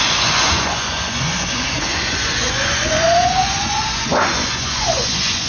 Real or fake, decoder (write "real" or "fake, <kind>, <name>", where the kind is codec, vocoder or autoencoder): fake, vocoder, Vocos